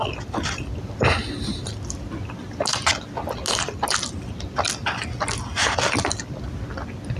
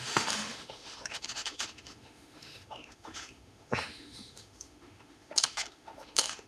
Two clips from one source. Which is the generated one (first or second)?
second